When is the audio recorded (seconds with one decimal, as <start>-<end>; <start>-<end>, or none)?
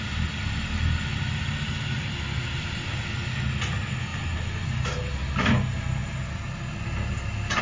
0.0-7.6